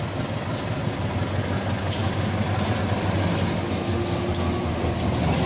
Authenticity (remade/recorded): recorded